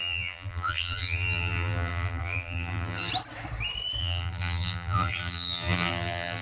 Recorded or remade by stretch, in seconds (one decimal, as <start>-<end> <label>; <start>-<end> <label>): 0.0-3.1 remade; 3.1-4.0 recorded; 4.0-6.4 remade